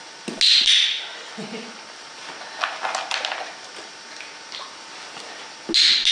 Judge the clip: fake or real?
real